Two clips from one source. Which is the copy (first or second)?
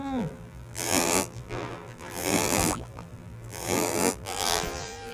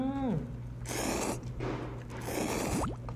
first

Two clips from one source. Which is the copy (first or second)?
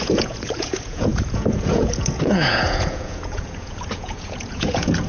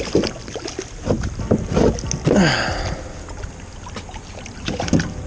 first